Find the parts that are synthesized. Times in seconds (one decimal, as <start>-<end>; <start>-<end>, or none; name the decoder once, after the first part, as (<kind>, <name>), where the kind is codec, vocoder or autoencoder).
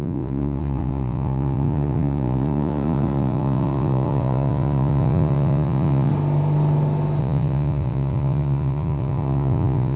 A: 0.0-6.1 (vocoder, Vocos); 7.2-10.0